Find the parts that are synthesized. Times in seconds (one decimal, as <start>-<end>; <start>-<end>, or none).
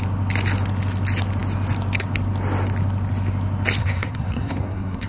3.8-5.1